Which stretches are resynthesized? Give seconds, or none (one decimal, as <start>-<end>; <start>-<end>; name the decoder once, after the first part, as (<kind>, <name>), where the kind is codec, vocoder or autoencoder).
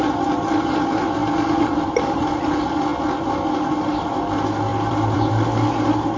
1.2-2.4 (vocoder, BigVGAN v2); 4.7-5.3